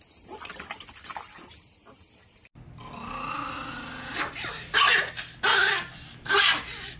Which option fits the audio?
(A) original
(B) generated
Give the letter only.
A